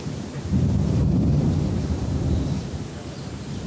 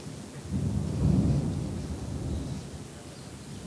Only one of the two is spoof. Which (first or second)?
first